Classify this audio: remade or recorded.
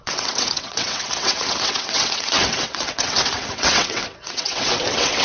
remade